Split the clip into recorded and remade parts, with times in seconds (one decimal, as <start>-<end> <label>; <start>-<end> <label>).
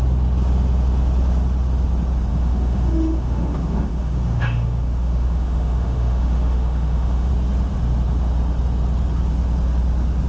0.0-2.3 recorded; 2.3-7.3 remade; 7.3-10.3 recorded